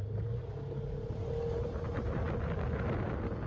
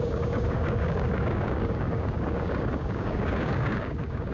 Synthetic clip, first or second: second